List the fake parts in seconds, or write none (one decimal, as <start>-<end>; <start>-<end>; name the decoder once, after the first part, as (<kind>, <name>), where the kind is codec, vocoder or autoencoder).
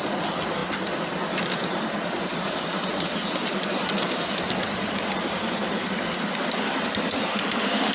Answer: 7.3-7.9 (autoencoder, DAC-VAE)